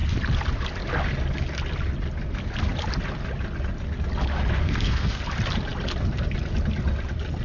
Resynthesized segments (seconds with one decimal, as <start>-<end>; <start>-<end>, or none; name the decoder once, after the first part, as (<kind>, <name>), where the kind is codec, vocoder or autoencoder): 4.6-5.2 (codec, SNAC)